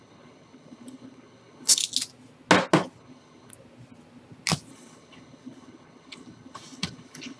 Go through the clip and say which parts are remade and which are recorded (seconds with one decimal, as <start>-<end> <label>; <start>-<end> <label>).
0.0-1.8 remade; 1.8-3.0 recorded; 3.0-3.5 remade; 3.5-4.7 recorded; 4.7-7.4 remade